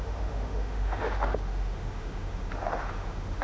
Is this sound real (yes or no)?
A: no